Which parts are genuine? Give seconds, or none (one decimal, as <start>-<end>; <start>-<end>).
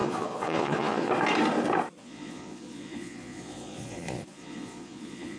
1.1-2.0